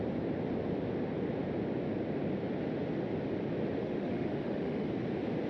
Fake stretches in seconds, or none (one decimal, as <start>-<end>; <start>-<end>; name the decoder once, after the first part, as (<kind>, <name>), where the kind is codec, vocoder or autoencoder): 3.8-4.9 (autoencoder, DAC-VAE)